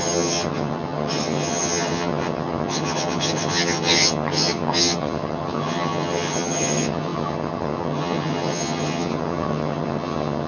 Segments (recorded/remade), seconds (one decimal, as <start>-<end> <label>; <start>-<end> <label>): 0.0-10.5 remade